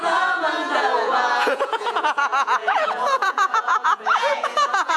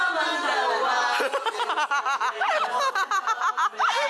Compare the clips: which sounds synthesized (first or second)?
first